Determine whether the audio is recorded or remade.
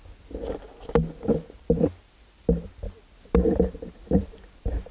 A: recorded